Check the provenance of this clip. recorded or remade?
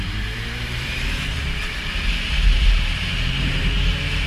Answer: remade